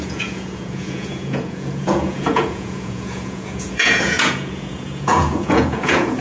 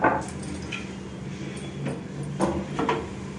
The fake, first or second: first